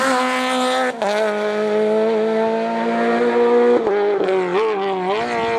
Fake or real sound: real